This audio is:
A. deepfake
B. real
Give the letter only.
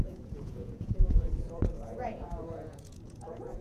A